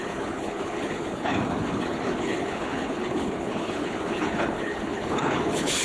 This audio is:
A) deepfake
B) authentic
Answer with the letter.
A